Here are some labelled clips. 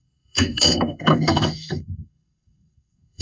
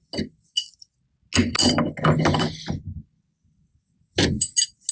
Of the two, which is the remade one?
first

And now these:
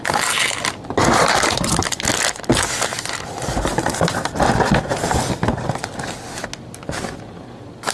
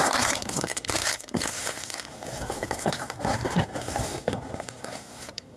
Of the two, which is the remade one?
second